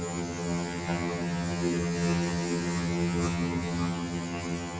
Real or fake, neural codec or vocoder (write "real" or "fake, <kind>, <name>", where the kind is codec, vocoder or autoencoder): fake, vocoder, HiFi-GAN